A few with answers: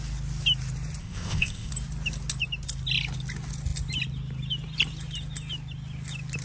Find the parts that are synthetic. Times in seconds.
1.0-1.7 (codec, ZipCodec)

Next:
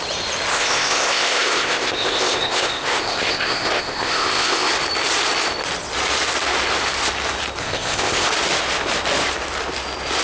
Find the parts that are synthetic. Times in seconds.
0.5-4.7 (codec, ZipCodec); 7.6-8.3

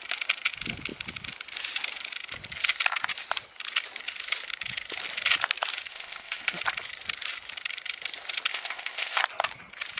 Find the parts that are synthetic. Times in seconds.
5.9-6.6 (codec, ZipCodec); 8.5-9.2